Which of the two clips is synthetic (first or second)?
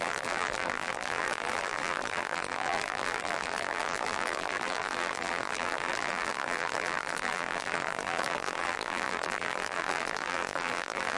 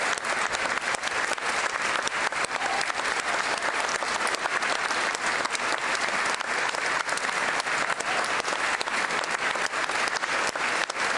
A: first